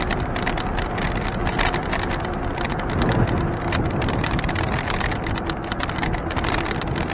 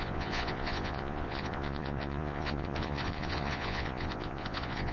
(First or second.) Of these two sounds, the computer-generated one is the second